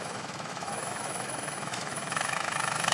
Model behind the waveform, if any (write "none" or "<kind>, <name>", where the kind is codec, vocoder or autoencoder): autoencoder, DAC-VAE